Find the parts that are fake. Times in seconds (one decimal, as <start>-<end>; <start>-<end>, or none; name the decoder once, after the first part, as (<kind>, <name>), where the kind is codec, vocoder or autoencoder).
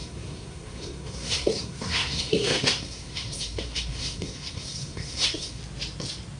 0.0-5.6 (codec, SNAC)